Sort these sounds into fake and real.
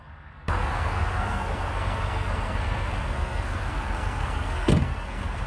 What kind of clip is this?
fake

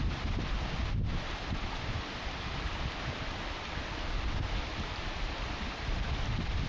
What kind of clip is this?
real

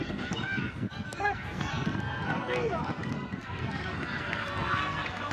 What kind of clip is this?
fake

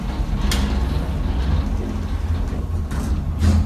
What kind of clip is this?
real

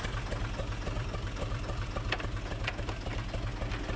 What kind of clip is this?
real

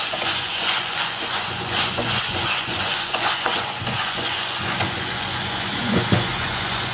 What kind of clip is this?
fake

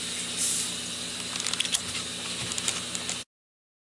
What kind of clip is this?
real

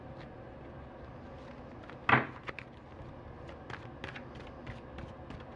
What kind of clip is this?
real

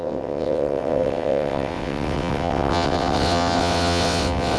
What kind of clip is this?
fake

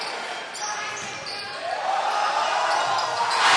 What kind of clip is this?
real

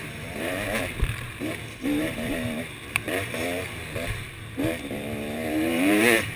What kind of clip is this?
fake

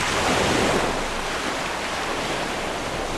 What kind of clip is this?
real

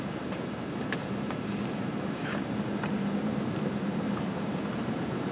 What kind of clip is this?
fake